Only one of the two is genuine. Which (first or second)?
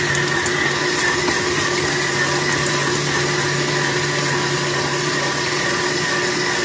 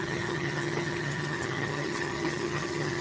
first